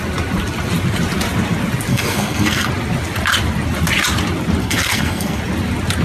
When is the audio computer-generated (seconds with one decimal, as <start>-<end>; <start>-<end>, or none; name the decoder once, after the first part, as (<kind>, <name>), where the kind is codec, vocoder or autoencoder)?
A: 1.9-2.7 (codec, SNAC); 4.6-5.4